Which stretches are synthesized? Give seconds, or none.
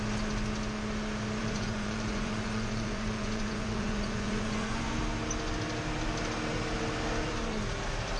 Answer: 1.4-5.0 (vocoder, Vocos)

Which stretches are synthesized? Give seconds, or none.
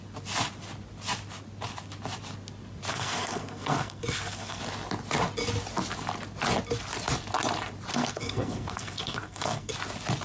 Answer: 2.9-4.6 (codec, SNAC); 7.9-9.7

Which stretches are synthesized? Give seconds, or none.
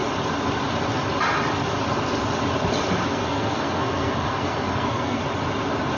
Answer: 3.1-5.2 (codec, SNAC)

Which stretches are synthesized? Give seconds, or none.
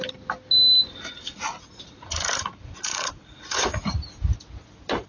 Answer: 0.9-4.0 (vocoder, Vocos)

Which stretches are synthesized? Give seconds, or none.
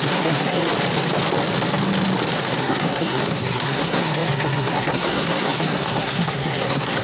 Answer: 0.0-0.7 (codec, SNAC); 2.6-7.0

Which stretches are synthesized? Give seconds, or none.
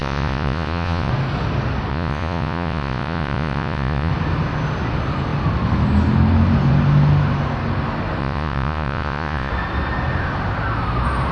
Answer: 0.0-1.1 (vocoder, Vocos); 1.9-4.1; 8.2-9.5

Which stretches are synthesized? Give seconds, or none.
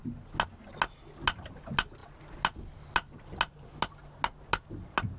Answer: none